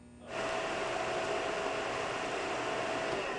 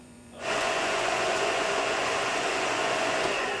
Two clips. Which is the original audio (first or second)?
first